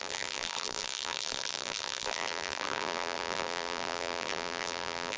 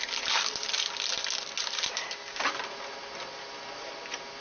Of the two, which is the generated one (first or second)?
first